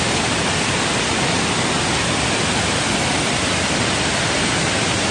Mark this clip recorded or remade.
recorded